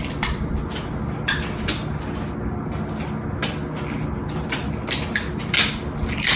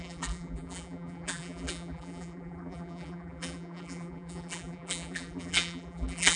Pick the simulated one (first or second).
second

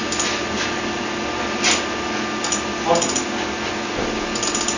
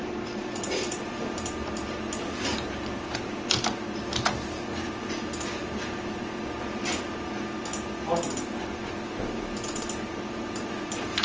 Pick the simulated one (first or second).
second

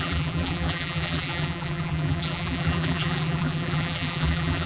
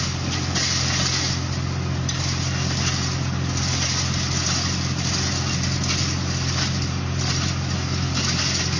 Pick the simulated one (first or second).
first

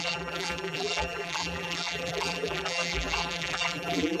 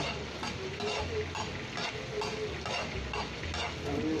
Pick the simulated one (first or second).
first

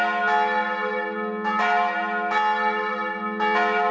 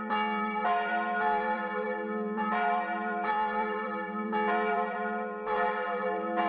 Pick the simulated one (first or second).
second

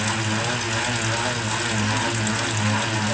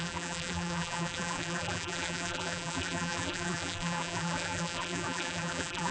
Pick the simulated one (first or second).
second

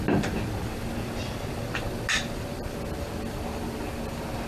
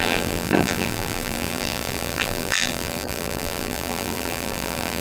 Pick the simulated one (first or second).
second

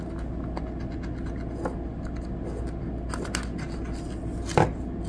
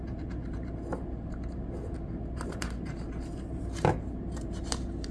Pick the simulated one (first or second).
second